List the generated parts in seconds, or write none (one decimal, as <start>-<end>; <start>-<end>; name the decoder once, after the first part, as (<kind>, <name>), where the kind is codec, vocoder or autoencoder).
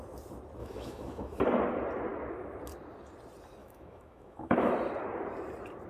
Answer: 0.6-1.4 (autoencoder, DAC-VAE); 3.6-4.7